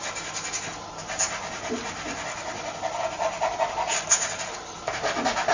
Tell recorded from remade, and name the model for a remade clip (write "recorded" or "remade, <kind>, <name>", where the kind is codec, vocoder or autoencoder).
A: recorded